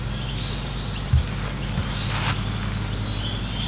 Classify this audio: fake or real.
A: real